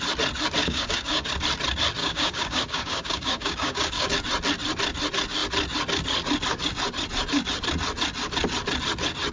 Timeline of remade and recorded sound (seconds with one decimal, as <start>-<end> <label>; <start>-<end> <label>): 0.0-0.6 recorded; 0.6-1.3 remade; 1.3-2.0 recorded; 2.0-4.1 remade; 4.1-9.3 recorded